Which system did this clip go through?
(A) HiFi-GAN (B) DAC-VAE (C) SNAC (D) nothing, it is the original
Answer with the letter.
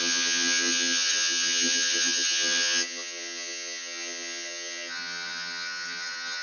A